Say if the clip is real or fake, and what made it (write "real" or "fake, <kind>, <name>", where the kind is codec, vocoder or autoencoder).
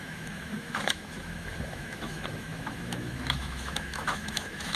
fake, autoencoder, DAC-VAE